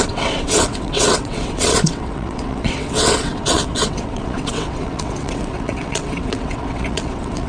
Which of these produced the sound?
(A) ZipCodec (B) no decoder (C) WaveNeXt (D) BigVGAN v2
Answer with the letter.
C